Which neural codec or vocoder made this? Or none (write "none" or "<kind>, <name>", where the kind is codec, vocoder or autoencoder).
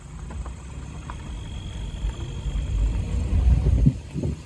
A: none